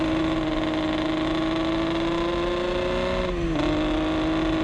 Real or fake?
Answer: real